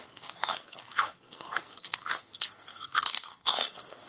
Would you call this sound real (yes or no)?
no